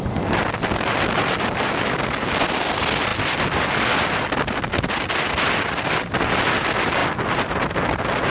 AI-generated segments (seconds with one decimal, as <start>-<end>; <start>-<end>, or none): none